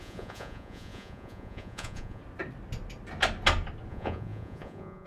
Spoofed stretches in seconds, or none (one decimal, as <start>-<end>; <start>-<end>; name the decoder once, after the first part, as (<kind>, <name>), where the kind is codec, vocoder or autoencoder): 0.0-2.2 (vocoder, Vocos); 3.9-5.1

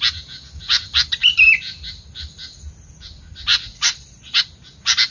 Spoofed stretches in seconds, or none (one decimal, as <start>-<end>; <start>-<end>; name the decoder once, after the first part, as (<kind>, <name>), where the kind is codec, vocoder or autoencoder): 3.5-4.4 (vocoder, Vocos)